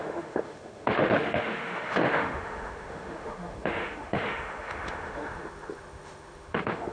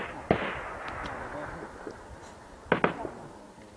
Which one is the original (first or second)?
second